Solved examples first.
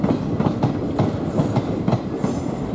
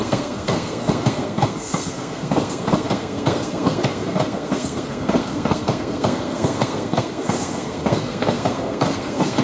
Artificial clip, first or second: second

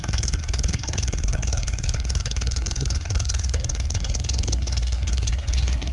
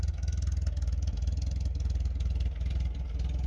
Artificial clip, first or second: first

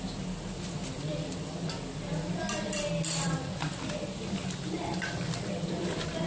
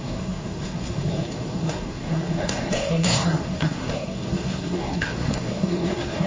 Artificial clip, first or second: second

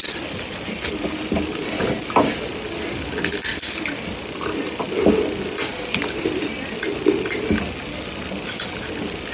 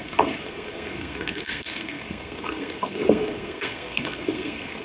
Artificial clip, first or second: second